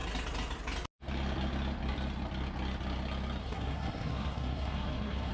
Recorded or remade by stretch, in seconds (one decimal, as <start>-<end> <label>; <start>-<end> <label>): 0.0-3.4 recorded; 3.4-5.3 remade